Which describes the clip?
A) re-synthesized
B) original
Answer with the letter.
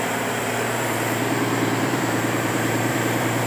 A